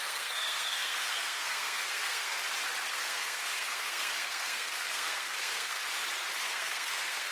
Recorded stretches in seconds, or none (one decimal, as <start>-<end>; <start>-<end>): 2.4-2.9; 5.8-6.4